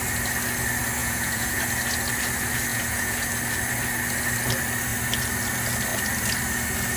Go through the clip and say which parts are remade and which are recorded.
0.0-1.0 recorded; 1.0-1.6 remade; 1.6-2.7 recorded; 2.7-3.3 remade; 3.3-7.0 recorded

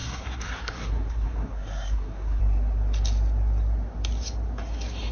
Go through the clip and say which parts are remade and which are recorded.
0.0-2.4 remade; 2.4-5.1 recorded

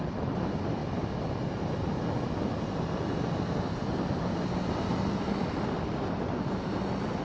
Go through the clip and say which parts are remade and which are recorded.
0.0-7.2 recorded

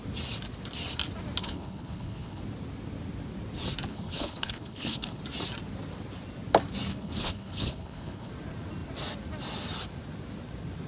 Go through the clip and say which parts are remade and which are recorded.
0.0-1.4 recorded; 1.4-2.4 remade; 2.4-3.9 recorded; 3.9-5.2 remade; 5.2-6.9 recorded; 6.9-8.3 remade; 8.3-10.9 recorded